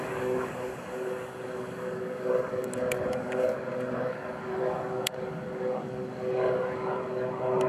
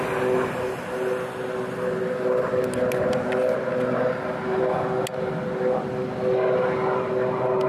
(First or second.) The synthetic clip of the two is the first